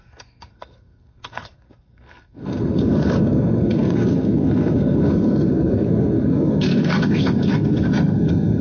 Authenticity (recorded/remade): remade